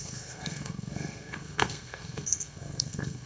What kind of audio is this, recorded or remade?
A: remade